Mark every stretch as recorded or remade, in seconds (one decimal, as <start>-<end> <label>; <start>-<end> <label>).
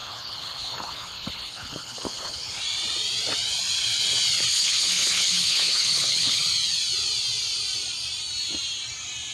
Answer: 0.0-2.6 remade; 2.6-4.5 recorded; 4.5-6.4 remade; 6.4-9.3 recorded